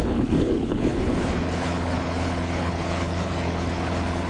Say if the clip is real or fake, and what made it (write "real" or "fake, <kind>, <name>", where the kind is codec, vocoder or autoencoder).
fake, codec, HILCodec